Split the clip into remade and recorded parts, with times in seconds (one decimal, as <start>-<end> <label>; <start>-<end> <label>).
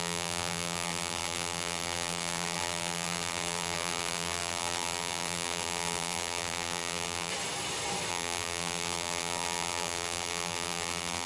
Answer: 0.0-7.3 remade; 7.3-8.1 recorded; 8.1-11.3 remade